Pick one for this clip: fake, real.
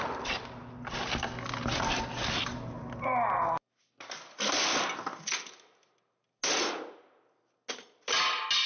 real